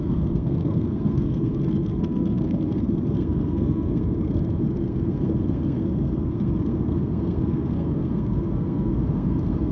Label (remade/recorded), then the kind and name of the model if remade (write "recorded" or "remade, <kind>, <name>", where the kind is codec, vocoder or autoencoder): remade, codec, SNAC